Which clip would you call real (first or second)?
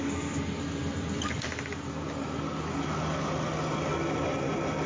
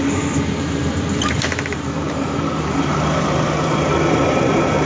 first